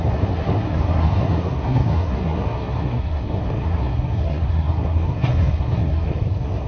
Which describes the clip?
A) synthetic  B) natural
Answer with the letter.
A